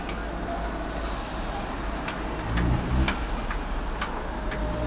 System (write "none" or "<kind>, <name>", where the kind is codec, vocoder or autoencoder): none